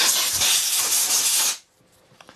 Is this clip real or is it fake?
real